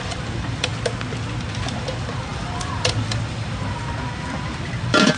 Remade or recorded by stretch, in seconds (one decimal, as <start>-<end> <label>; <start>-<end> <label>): 0.0-0.7 remade; 0.7-1.4 recorded; 1.4-5.2 remade